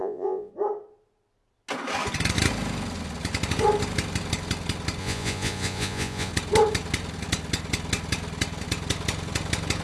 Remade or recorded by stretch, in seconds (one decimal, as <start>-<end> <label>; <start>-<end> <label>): 0.0-0.5 remade; 0.5-5.0 recorded; 5.0-6.3 remade; 6.3-9.8 recorded